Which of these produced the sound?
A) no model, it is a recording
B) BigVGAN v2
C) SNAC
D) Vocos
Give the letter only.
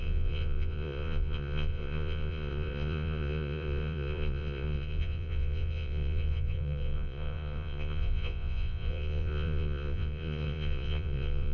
D